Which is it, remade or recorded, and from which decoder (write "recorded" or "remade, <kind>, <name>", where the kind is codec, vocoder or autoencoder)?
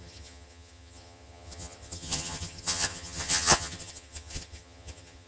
remade, vocoder, HiFi-GAN